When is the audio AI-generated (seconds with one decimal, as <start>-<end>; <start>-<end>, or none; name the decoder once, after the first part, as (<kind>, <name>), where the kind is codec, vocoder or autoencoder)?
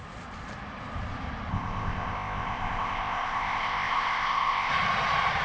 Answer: 1.5-4.7 (codec, ZipCodec)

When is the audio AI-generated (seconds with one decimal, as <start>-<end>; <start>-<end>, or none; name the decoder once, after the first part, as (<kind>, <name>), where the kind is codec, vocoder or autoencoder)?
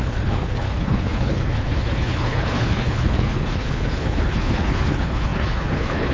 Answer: 0.0-6.1 (codec, HILCodec)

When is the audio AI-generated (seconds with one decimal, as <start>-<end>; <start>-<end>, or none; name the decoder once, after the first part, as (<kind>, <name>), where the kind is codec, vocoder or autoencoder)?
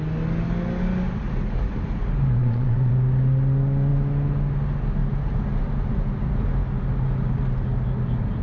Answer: 2.4-2.9 (vocoder, WaveNeXt)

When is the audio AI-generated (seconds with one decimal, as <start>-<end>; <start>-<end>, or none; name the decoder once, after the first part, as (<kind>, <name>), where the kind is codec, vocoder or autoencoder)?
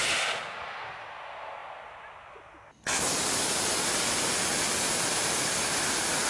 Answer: none